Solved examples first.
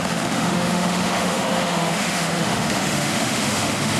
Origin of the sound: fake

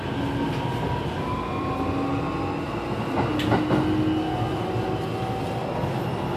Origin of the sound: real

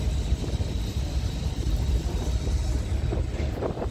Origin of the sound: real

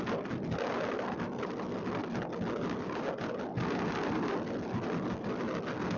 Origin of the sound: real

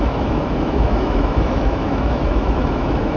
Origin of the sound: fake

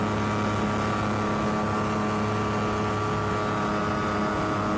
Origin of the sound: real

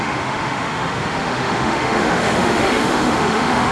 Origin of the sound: fake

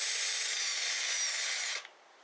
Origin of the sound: real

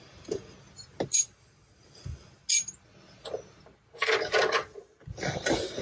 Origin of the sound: real